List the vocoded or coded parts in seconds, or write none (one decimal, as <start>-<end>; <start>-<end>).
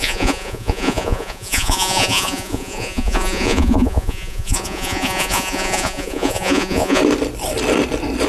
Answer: 0.0-7.0